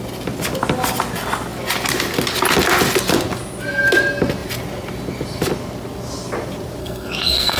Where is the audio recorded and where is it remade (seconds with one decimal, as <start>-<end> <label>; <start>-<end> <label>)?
0.0-6.8 recorded; 6.8-7.6 remade